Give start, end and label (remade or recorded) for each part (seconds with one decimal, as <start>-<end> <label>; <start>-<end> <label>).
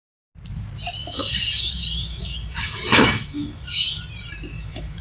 0.0-1.0 recorded; 1.0-4.0 remade; 4.0-4.5 recorded; 4.5-5.0 remade